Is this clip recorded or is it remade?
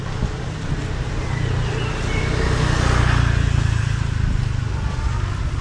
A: recorded